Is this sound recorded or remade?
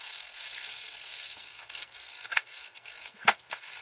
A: remade